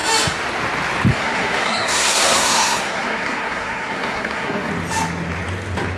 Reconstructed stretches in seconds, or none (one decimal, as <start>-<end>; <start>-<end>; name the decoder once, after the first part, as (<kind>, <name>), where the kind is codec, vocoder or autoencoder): 1.1-4.7 (codec, SNAC)